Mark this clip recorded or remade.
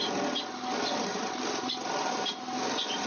recorded